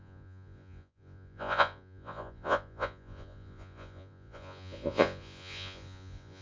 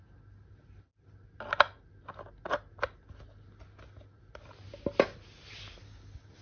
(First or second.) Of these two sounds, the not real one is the first